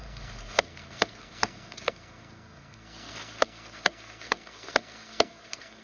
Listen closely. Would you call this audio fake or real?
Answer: fake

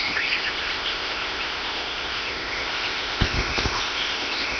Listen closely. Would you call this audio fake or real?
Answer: fake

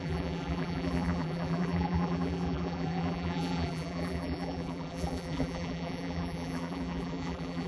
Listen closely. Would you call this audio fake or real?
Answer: fake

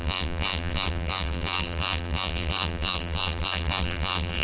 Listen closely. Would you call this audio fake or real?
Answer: fake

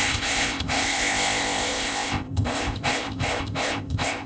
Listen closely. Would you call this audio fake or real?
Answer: fake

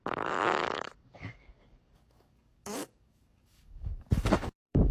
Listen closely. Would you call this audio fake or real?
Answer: fake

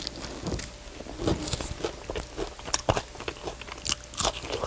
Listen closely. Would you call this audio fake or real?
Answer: real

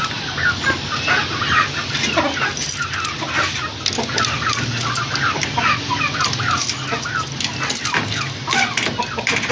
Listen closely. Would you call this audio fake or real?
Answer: real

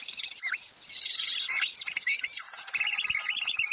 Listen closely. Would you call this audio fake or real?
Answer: real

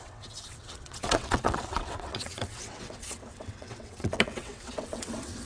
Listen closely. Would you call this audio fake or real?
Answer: fake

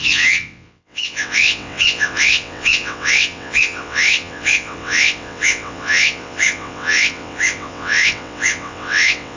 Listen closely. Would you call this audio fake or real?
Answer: fake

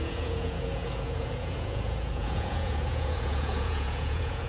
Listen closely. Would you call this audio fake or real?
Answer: fake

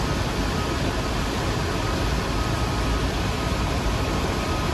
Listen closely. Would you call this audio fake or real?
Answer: real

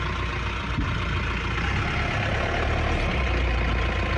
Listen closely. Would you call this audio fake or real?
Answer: real